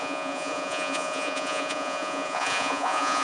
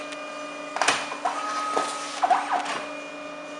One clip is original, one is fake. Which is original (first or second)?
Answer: second